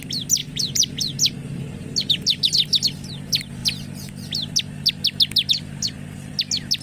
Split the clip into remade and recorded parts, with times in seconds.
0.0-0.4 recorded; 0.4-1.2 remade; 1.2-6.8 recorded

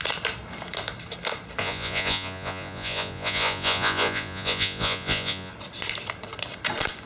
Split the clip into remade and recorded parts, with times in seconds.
0.0-1.6 recorded; 1.6-5.5 remade; 5.5-7.1 recorded